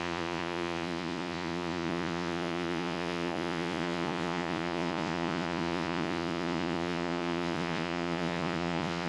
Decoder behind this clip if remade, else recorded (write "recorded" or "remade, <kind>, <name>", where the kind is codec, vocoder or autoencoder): remade, vocoder, Vocos